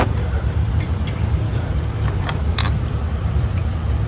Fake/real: fake